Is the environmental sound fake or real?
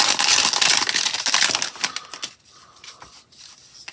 real